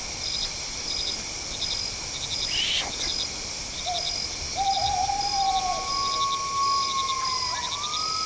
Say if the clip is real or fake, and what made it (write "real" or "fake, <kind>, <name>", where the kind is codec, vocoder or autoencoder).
real